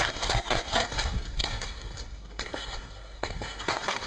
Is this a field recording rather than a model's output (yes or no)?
no